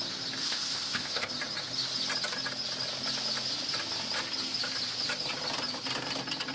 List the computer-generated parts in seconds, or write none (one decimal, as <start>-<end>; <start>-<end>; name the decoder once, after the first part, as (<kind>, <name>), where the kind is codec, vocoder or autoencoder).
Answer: 0.4-1.3 (codec, ZipCodec)